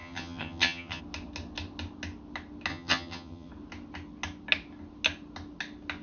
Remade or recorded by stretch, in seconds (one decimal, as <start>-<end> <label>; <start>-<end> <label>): 0.0-1.0 remade; 1.0-2.7 recorded; 2.7-3.5 remade; 3.5-6.0 recorded